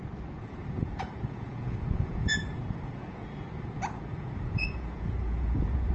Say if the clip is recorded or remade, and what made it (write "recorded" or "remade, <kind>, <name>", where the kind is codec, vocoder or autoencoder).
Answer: remade, vocoder, Vocos